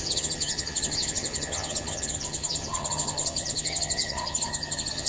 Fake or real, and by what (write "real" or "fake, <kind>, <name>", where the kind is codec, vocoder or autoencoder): fake, vocoder, HiFi-GAN